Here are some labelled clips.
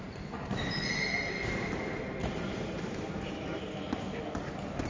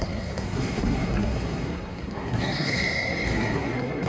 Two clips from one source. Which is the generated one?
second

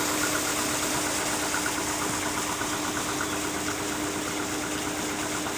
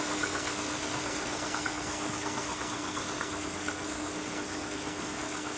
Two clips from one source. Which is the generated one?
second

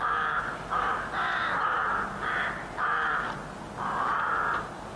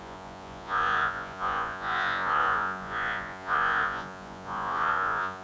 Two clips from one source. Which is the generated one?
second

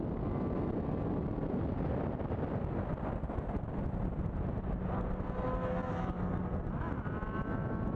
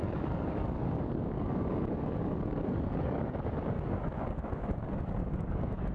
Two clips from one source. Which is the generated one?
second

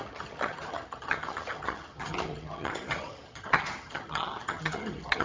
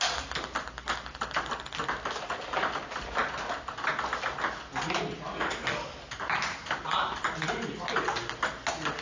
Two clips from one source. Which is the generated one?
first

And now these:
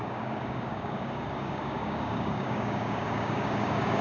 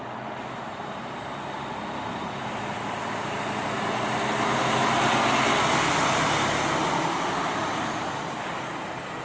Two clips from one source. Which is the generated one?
first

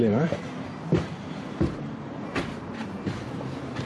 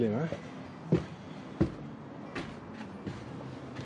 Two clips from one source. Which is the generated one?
first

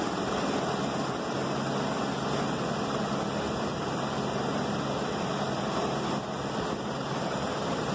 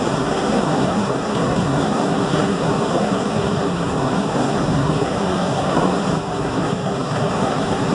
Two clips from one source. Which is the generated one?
second